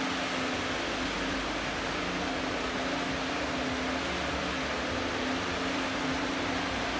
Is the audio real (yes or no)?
yes